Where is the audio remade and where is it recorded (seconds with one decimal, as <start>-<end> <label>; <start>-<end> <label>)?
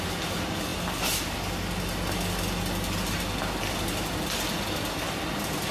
0.0-5.7 recorded